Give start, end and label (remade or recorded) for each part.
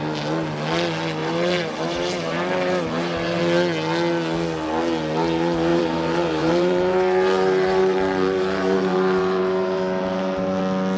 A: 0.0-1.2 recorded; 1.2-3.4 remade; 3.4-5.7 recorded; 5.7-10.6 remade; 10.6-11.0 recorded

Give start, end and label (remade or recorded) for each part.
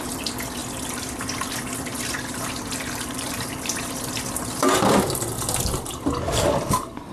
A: 0.0-7.1 remade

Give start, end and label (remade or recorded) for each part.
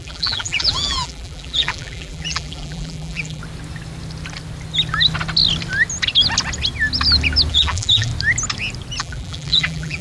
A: 0.0-3.4 remade; 3.4-7.5 recorded; 7.5-8.1 remade; 8.1-9.0 recorded; 9.0-10.0 remade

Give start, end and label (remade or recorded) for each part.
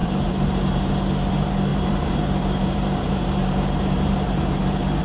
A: 0.0-0.9 remade; 0.9-1.7 recorded; 1.7-5.0 remade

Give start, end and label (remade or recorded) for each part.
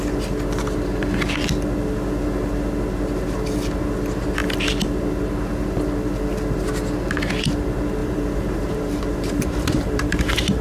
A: 0.0-8.0 recorded; 8.0-10.6 remade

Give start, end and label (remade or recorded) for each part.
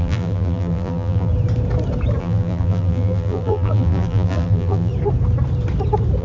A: 0.0-1.3 remade; 1.3-2.2 recorded; 2.2-4.9 remade; 4.9-6.2 recorded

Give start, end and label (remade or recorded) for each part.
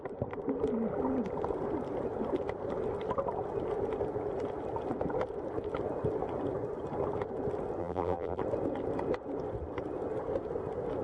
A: 0.0-7.8 recorded; 7.8-8.4 remade; 8.4-11.0 recorded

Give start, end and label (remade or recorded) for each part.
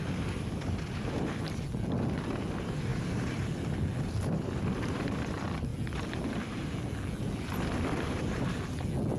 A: 0.0-9.2 recorded